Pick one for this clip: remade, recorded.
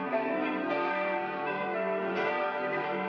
remade